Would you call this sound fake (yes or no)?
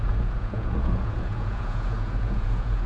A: yes